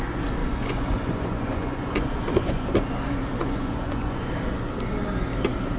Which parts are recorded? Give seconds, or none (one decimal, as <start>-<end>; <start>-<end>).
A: 0.0-0.4; 2.7-3.4; 4.3-5.8